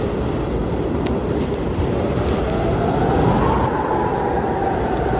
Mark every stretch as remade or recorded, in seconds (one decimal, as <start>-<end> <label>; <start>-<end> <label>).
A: 0.0-0.6 recorded; 0.6-1.8 remade; 1.8-5.2 recorded